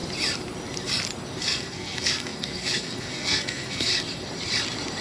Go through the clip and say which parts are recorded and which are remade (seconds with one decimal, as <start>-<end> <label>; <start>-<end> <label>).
0.0-1.4 recorded; 1.4-3.9 remade; 3.9-5.0 recorded